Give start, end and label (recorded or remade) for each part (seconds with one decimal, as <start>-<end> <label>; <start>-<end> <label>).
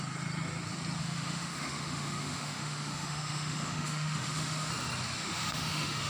0.0-1.0 recorded; 1.0-4.7 remade; 4.7-5.2 recorded; 5.2-6.1 remade